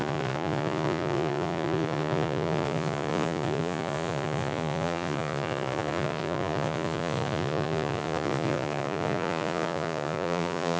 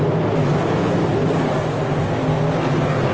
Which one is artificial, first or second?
first